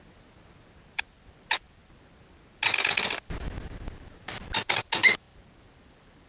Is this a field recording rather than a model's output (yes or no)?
yes